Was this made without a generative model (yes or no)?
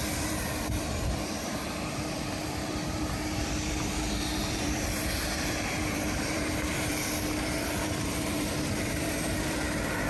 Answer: no